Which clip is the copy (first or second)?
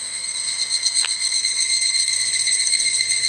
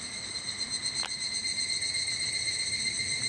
first